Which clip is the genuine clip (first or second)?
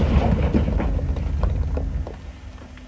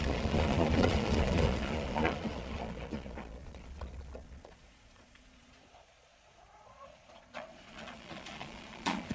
first